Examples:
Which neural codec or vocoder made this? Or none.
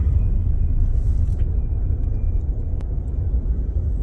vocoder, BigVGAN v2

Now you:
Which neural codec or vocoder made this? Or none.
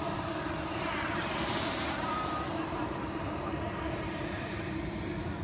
vocoder, BigVGAN v2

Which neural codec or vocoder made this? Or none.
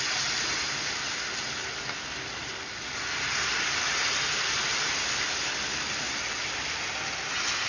none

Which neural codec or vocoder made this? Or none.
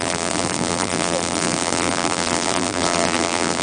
vocoder, BigVGAN v2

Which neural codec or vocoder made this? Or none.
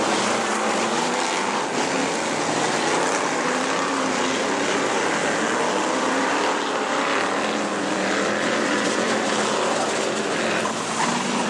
none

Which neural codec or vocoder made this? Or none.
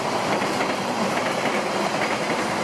none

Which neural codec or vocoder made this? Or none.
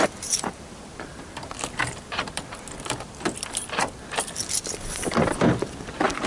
vocoder, BigVGAN v2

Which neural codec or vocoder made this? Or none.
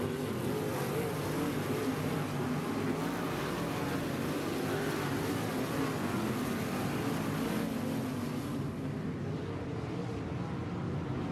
none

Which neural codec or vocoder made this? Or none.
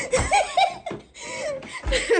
none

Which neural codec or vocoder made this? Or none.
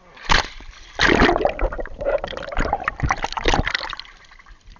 vocoder, BigVGAN v2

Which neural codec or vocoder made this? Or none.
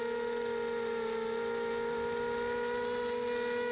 none